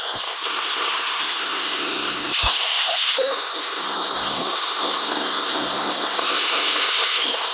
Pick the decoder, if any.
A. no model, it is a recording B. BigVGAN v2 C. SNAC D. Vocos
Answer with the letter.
C